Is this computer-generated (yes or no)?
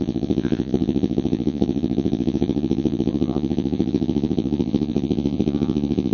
yes